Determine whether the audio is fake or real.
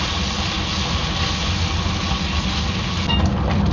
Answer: real